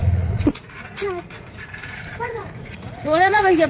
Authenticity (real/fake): fake